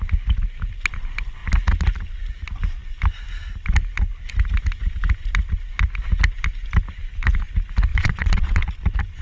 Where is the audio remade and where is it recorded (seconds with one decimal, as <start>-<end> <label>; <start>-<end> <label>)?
0.0-7.9 recorded; 7.9-8.6 remade; 8.6-9.2 recorded